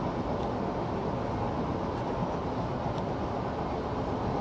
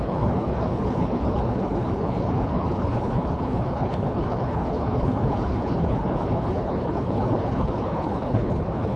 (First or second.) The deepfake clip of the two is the second